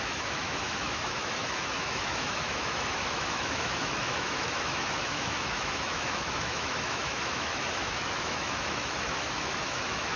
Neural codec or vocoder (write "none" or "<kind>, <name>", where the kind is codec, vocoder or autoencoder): autoencoder, DAC-VAE